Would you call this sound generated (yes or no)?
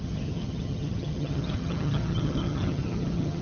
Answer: yes